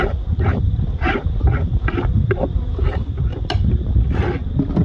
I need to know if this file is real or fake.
real